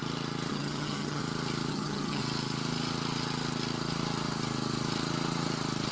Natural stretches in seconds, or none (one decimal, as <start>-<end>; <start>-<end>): 0.0-0.5; 1.2-1.7; 2.2-5.9